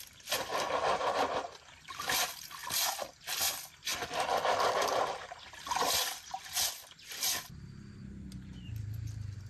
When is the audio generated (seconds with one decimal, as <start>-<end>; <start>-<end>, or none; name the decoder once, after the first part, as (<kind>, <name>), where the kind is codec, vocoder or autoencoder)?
none